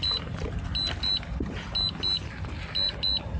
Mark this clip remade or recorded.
recorded